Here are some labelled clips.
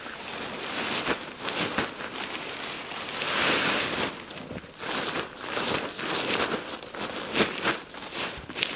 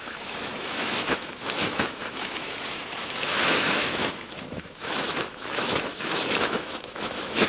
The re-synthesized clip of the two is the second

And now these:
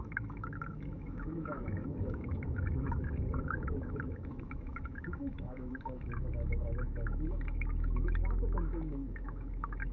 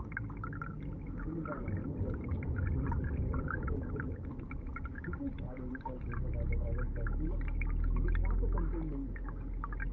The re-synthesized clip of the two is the first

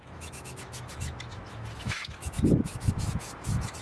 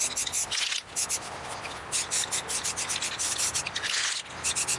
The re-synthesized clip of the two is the first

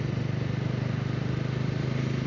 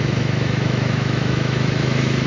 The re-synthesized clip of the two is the second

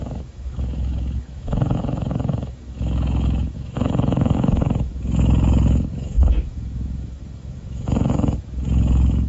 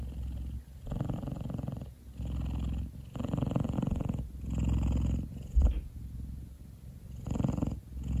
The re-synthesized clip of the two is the first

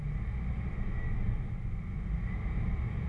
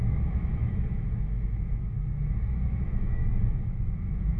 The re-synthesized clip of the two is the second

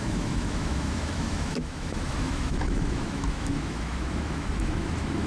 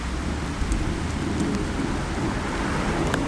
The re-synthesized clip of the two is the first